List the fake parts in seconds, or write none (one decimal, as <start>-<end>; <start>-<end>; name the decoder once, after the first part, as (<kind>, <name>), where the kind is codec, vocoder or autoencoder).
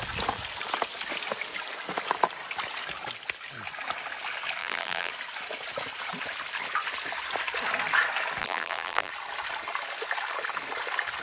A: 4.6-5.1 (vocoder, BigVGAN v2); 8.4-9.1